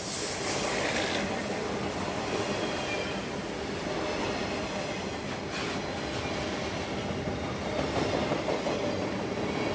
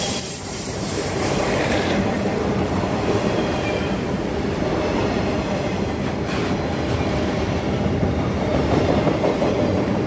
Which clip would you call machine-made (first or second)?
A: second